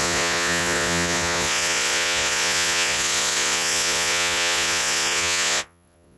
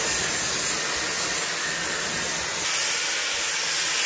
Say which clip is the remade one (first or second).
first